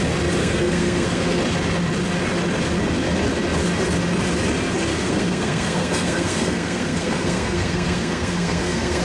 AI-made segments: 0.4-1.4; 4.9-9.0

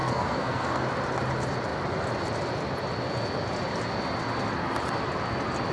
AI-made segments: 0.0-0.8

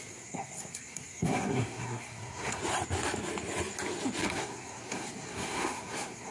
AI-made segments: 0.0-2.6; 4.3-6.3